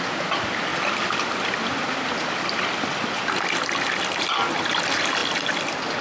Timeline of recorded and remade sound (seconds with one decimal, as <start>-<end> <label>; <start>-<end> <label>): 0.0-6.0 recorded